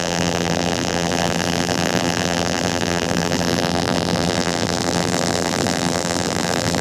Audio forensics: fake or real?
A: fake